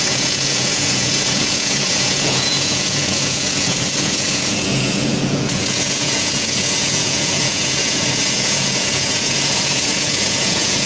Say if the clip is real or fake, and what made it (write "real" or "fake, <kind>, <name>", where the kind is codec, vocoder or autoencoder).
fake, vocoder, Vocos